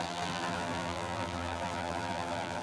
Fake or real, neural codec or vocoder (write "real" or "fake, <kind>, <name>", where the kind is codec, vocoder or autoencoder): fake, vocoder, BigVGAN v2